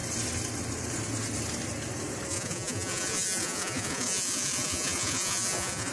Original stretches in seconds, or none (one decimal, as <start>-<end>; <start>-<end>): 0.0-2.3

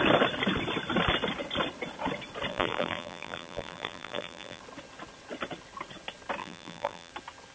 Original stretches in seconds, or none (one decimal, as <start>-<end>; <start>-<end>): 0.0-2.5; 4.6-6.4; 7.1-7.5

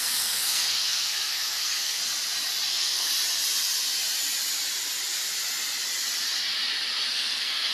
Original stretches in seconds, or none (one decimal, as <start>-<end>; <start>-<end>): 2.0-2.7; 3.1-7.1

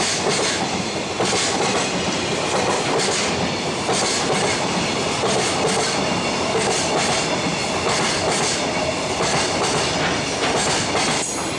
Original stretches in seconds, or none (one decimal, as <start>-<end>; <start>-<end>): 0.0-11.6